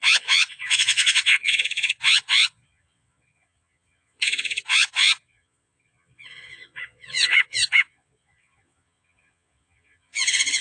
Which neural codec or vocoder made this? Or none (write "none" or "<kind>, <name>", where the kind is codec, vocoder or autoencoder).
vocoder, Vocos